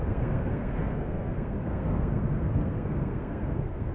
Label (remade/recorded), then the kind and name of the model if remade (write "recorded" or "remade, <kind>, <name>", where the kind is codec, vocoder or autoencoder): remade, codec, SNAC